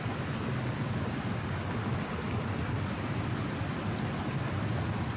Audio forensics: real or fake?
real